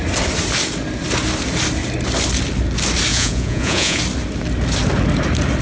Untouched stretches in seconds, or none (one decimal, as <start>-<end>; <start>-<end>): 0.0-3.1; 4.0-5.6